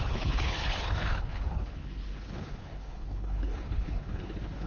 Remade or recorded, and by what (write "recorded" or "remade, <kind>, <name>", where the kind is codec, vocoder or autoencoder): remade, codec, HILCodec